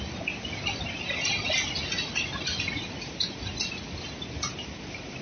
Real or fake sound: real